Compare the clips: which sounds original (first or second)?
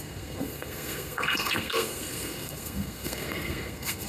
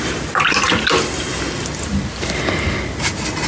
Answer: second